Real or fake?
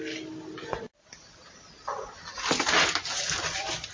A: real